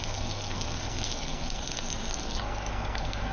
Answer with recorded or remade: remade